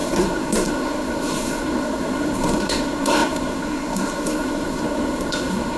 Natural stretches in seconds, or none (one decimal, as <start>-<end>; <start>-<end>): none

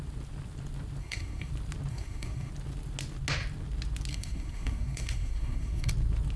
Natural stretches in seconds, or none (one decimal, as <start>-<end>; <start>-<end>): 0.0-1.0; 1.5-1.9; 2.5-4.1; 5.9-6.4